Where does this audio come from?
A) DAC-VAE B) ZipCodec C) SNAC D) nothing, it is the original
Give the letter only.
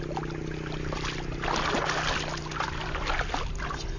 D